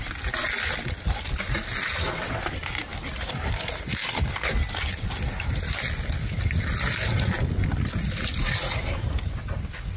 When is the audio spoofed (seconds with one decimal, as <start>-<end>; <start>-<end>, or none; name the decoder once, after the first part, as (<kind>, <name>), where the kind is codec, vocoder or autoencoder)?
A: none